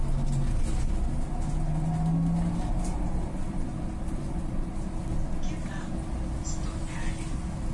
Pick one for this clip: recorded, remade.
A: recorded